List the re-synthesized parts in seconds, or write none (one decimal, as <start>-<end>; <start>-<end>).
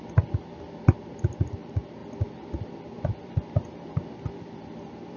2.0-5.2